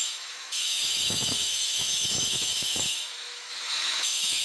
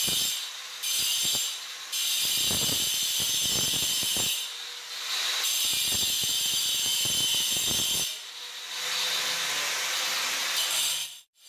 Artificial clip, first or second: first